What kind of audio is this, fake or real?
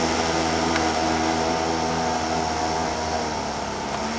real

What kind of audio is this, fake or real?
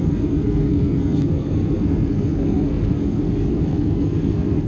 fake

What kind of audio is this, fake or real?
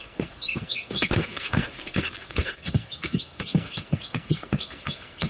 fake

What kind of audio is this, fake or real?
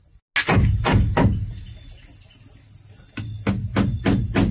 real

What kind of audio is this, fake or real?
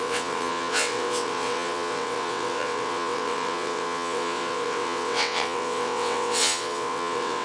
fake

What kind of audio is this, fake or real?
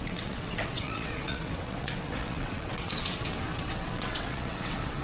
fake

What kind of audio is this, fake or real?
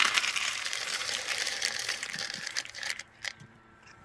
fake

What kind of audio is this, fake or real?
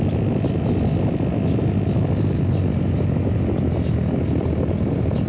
real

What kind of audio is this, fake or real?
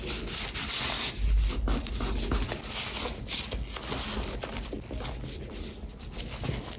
real